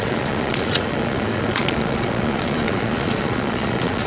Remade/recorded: remade